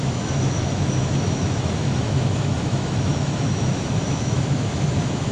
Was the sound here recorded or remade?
remade